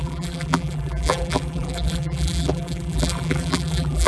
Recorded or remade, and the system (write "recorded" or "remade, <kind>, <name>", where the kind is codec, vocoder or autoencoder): remade, vocoder, BigVGAN v2